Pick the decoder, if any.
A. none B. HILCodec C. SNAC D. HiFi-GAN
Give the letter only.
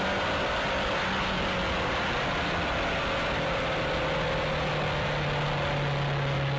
A